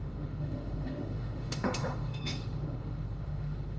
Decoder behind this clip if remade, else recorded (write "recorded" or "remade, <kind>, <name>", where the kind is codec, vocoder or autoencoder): remade, autoencoder, DAC-VAE